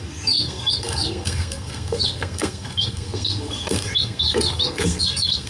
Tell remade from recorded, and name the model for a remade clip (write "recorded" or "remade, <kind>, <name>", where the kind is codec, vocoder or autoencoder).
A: remade, codec, SNAC